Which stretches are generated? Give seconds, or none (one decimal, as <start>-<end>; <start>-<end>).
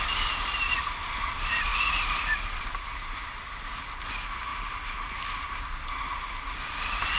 none